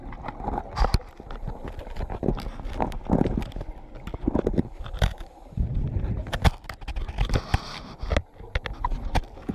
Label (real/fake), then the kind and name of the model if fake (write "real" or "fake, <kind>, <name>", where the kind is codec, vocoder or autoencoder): real